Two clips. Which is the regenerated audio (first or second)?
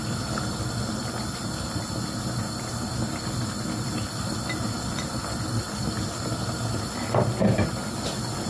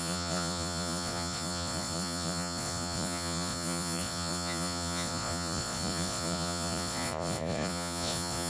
second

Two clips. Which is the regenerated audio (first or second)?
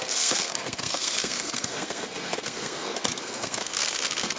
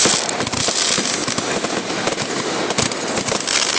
first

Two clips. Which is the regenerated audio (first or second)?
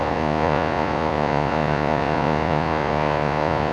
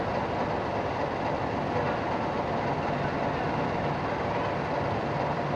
first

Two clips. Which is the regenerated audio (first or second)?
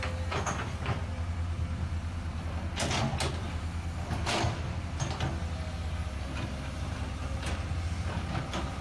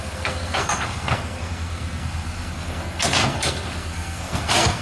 second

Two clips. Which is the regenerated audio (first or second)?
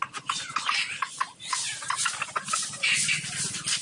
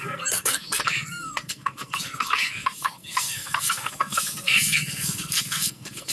second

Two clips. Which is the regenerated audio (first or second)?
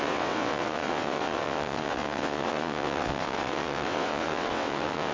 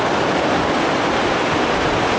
first